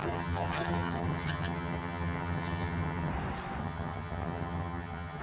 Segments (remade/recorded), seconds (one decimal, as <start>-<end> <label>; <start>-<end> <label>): 0.0-3.1 remade; 3.1-3.6 recorded; 3.6-5.2 remade